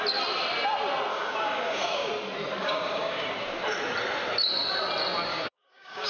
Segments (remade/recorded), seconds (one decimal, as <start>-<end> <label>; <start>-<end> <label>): 0.0-1.1 recorded; 1.1-2.1 remade; 2.1-2.6 recorded; 2.6-3.3 remade; 3.3-5.3 recorded; 5.3-6.1 remade